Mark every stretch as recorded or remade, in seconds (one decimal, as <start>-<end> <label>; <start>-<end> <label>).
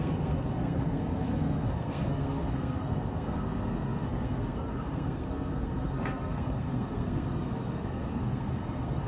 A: 0.0-9.1 remade